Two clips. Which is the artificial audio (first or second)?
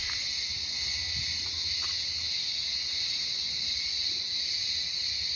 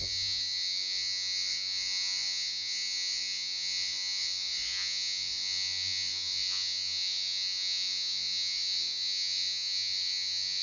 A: second